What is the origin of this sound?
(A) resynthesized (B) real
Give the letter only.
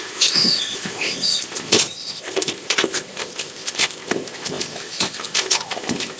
A